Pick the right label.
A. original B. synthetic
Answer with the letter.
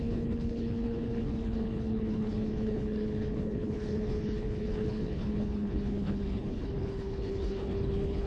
B